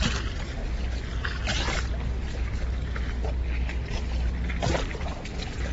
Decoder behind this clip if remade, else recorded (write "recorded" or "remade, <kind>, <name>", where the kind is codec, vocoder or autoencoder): recorded